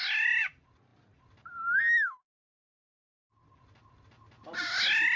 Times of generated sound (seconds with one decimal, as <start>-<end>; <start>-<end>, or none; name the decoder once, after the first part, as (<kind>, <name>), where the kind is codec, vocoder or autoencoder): none